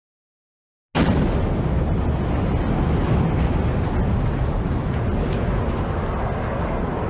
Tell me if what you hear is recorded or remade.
recorded